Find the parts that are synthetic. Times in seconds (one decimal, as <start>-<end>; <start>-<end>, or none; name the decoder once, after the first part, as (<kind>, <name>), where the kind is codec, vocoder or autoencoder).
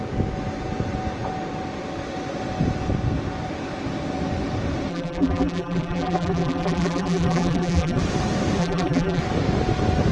4.9-8.0 (vocoder, BigVGAN v2); 8.6-9.2